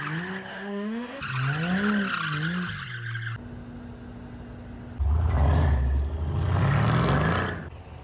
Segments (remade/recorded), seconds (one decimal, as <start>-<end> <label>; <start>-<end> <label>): 0.0-0.5 recorded; 0.5-1.2 remade; 1.2-8.0 recorded